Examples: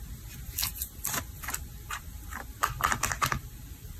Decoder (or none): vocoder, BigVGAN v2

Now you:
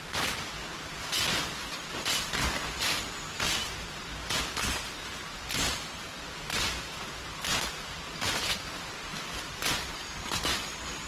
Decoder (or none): none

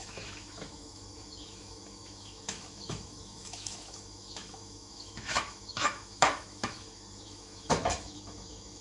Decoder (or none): autoencoder, DAC-VAE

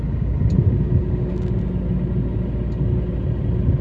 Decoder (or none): none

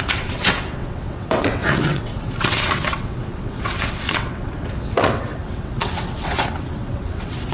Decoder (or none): vocoder, WaveNeXt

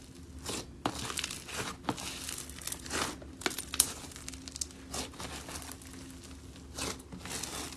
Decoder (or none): none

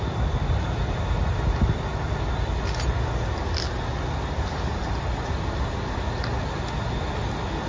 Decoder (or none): none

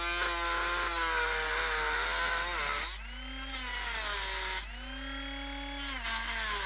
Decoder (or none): none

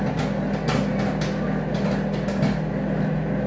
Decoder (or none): none